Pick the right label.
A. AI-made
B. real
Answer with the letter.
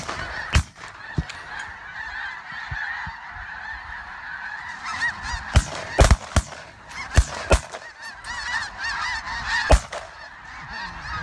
B